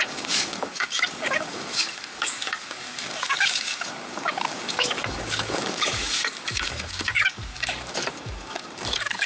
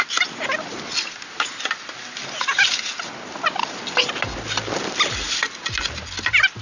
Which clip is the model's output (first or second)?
first